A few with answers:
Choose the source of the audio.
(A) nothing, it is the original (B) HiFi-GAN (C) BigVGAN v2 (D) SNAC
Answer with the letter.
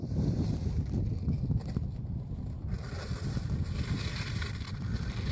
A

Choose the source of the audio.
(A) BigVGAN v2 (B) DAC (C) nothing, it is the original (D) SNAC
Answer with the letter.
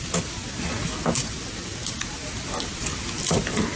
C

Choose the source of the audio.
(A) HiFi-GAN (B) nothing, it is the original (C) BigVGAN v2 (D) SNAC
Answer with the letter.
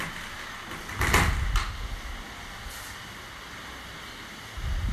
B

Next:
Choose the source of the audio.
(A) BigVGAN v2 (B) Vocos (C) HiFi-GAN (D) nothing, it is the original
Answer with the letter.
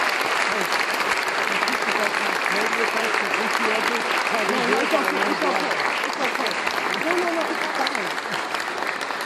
A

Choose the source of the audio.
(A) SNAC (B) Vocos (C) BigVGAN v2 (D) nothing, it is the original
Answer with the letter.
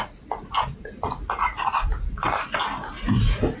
D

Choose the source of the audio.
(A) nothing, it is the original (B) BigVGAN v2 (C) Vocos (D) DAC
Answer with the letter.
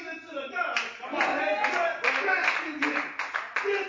A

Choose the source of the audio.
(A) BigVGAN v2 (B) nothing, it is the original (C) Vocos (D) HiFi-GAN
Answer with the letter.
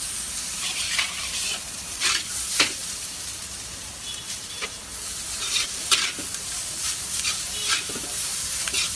A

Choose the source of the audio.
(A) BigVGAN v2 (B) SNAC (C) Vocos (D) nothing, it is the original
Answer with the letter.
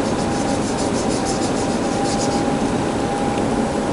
D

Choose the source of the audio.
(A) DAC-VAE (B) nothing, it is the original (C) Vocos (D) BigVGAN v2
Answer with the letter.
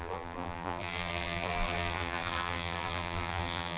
D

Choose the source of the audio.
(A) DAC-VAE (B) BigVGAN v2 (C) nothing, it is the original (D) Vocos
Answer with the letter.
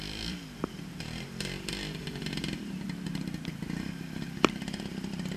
B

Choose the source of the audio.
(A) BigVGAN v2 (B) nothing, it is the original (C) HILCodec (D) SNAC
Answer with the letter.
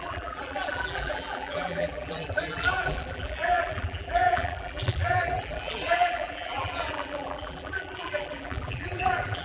A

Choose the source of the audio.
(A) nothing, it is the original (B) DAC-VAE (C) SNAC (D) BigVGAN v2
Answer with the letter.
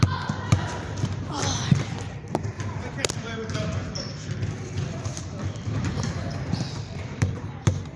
D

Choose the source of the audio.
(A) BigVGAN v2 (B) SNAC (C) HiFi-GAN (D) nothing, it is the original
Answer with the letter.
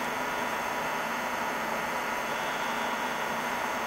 A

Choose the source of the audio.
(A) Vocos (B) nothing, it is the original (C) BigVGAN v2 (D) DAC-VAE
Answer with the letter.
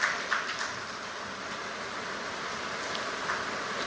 B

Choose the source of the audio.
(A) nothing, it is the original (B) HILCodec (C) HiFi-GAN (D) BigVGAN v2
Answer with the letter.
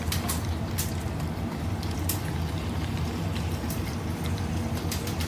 A